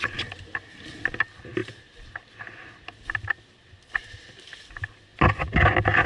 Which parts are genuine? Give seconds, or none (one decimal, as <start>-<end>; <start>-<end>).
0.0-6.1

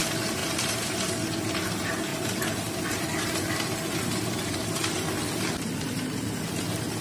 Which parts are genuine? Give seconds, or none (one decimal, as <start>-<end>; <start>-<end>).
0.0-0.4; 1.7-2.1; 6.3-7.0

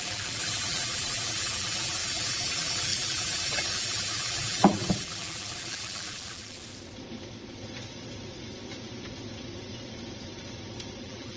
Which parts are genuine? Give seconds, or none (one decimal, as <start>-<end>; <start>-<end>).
6.6-11.0